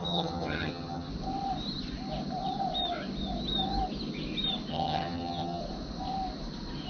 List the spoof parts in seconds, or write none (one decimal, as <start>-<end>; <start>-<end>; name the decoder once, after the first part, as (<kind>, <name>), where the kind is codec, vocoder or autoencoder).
0.0-1.1 (vocoder, HiFi-GAN); 4.7-5.6